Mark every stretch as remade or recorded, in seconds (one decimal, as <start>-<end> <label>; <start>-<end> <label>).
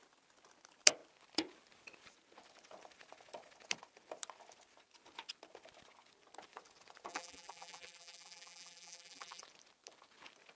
0.0-7.1 recorded; 7.1-9.4 remade; 9.4-10.6 recorded